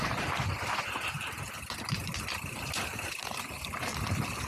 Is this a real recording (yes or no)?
yes